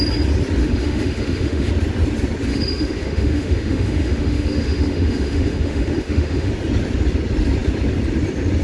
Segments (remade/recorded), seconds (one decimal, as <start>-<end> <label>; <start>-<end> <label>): 0.0-0.6 recorded; 0.6-1.7 remade; 1.7-2.5 recorded; 2.5-6.5 remade; 6.5-8.6 recorded